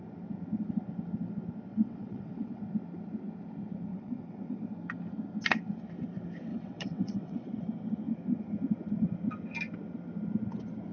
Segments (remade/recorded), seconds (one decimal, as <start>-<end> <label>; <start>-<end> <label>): 0.0-1.7 recorded; 1.7-2.6 remade; 2.6-3.9 recorded; 3.9-4.6 remade; 4.6-6.5 recorded; 6.5-7.6 remade; 7.6-10.9 recorded